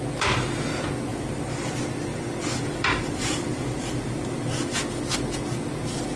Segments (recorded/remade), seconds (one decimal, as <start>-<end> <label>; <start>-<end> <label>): 0.0-1.1 recorded; 1.1-1.7 remade; 1.7-2.1 recorded; 2.1-4.9 remade; 4.9-6.2 recorded